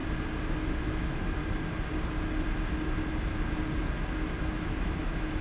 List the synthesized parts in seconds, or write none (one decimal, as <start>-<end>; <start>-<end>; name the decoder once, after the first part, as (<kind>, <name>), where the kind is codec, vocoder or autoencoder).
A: 0.8-1.4 (autoencoder, DAC-VAE); 4.4-5.4